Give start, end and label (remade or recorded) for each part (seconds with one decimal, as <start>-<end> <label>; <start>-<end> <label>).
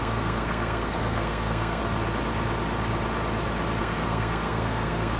0.0-1.8 remade; 1.8-3.8 recorded; 3.8-5.2 remade